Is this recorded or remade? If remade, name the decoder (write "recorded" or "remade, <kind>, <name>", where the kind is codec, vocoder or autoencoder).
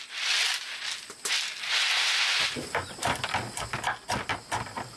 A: recorded